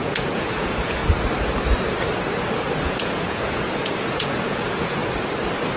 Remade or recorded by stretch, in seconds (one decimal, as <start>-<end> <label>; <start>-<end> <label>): 0.0-1.0 remade; 1.0-2.8 recorded; 2.8-5.0 remade; 5.0-5.8 recorded